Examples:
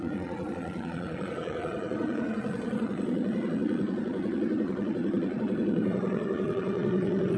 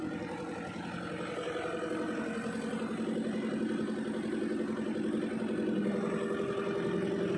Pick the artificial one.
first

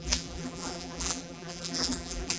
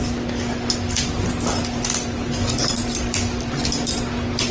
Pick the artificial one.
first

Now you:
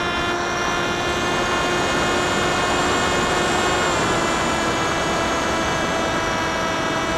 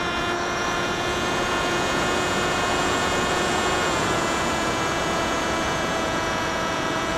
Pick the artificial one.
second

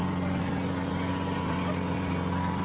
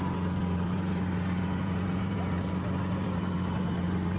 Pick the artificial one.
second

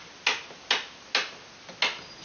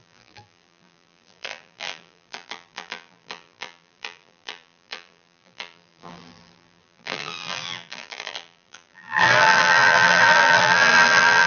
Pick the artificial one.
second